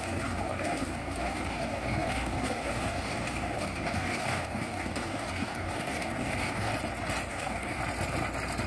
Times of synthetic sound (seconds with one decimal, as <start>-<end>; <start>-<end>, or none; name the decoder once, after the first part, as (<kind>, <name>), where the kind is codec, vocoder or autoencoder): 0.0-6.7 (codec, DAC); 7.3-7.8